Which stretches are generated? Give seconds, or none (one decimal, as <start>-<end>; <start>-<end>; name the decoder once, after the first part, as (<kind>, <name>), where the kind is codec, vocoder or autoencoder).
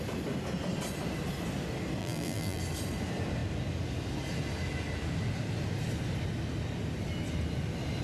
2.0-2.6 (vocoder, BigVGAN v2)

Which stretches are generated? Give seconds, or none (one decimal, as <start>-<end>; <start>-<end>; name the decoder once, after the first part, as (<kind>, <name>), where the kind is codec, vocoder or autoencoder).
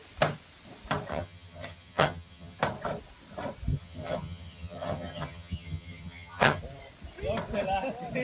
1.1-2.6 (vocoder, HiFi-GAN); 3.7-6.6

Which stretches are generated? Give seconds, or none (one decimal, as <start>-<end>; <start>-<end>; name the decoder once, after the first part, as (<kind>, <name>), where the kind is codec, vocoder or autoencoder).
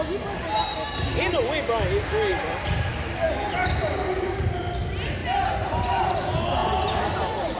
2.3-4.7 (vocoder, BigVGAN v2); 5.2-6.0; 6.6-7.6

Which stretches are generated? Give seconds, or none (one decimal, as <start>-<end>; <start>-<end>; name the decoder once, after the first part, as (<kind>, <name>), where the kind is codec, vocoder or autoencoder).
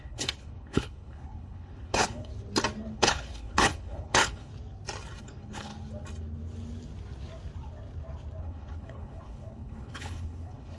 0.0-2.3 (codec, HILCodec); 2.9-4.5; 5.2-5.7; 8.4-10.8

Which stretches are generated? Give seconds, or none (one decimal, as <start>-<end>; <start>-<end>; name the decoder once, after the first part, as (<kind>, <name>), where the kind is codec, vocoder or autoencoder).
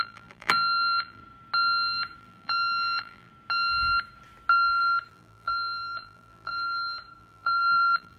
0.0-1.2 (vocoder, BigVGAN v2); 2.2-3.3; 5.1-6.5; 7.2-8.2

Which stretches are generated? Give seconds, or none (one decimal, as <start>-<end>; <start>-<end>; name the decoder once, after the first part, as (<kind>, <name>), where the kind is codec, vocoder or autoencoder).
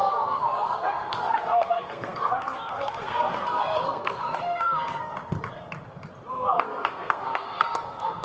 0.0-5.1 (codec, SNAC); 6.3-8.2